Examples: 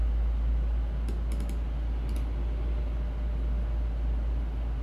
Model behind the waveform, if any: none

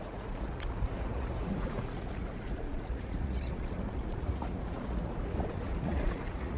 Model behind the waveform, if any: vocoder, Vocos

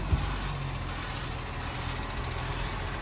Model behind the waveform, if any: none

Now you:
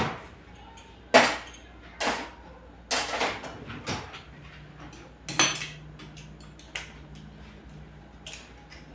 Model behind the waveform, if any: none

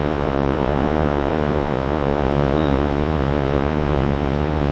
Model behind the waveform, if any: vocoder, Vocos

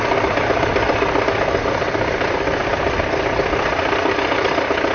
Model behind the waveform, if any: none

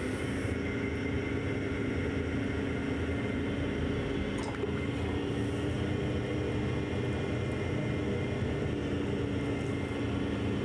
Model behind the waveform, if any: none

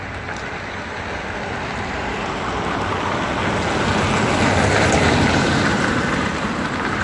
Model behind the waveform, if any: none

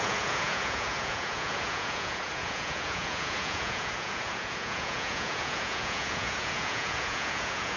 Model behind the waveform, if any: vocoder, Vocos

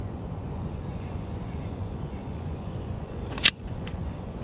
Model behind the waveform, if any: vocoder, Vocos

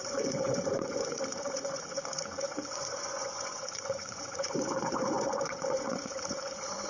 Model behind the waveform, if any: vocoder, Vocos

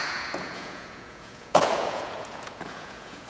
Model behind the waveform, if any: vocoder, Vocos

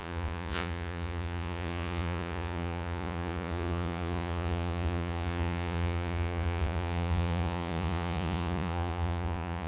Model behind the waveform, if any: vocoder, Vocos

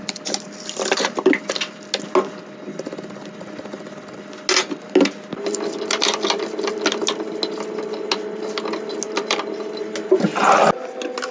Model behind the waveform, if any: none